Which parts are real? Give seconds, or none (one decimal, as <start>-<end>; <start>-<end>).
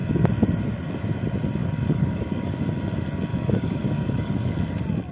0.0-1.6; 2.6-3.3; 4.5-5.1